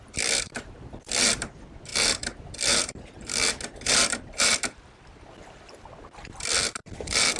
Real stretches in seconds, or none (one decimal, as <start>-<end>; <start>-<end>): 0.0-7.4